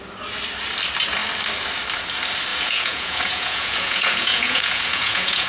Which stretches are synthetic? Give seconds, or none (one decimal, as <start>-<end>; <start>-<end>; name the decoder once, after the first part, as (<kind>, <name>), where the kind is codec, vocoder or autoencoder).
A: 2.5-5.5 (vocoder, Vocos)